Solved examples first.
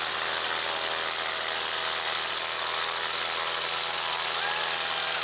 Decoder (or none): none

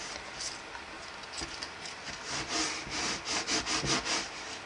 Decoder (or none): none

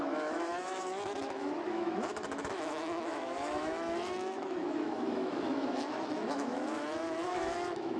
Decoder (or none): autoencoder, DAC-VAE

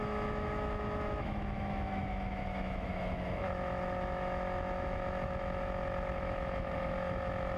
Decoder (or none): autoencoder, DAC-VAE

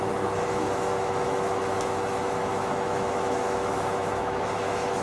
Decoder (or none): autoencoder, DAC-VAE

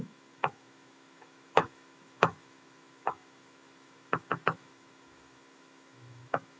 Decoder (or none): autoencoder, DAC-VAE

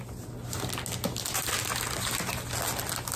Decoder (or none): none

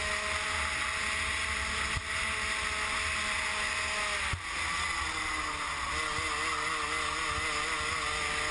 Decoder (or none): none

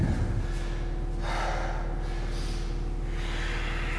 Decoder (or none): none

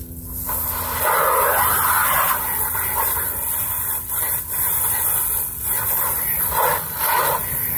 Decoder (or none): none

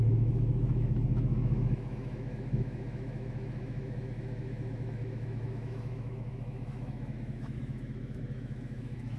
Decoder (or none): autoencoder, DAC-VAE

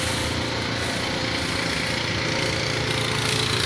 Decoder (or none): none